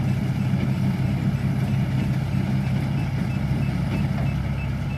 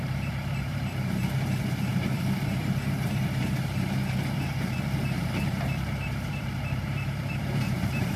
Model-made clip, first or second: second